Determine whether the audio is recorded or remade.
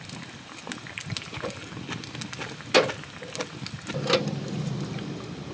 recorded